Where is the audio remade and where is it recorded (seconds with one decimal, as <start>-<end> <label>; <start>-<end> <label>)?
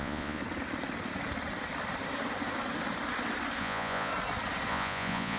0.0-0.4 remade; 0.4-3.6 recorded; 3.6-4.1 remade; 4.1-4.7 recorded; 4.7-5.4 remade